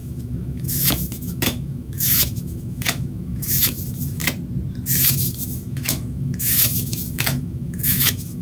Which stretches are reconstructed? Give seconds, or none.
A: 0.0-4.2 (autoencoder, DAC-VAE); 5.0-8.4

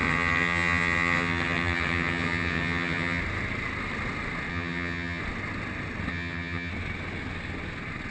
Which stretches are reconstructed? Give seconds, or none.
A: 0.0-3.2 (vocoder, HiFi-GAN); 4.5-5.2; 6.1-6.7

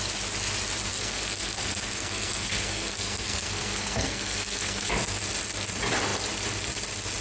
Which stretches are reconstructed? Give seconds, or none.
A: 0.9-5.2 (codec, SNAC)

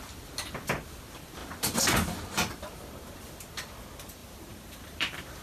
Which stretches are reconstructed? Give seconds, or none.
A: 4.2-5.4 (vocoder, BigVGAN v2)